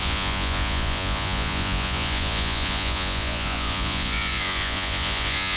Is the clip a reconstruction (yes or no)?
yes